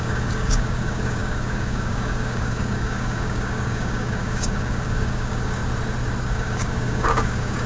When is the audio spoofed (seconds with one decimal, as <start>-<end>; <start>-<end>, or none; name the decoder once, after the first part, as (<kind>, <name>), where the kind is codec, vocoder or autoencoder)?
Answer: 0.0-5.6 (codec, DAC); 6.2-7.7